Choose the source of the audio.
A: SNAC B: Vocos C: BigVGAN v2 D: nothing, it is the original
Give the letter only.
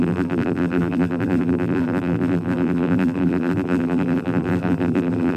C